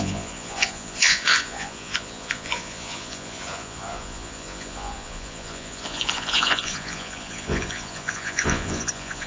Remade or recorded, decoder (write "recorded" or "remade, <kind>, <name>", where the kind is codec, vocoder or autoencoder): remade, vocoder, Vocos